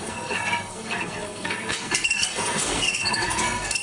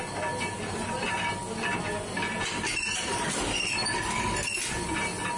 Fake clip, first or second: first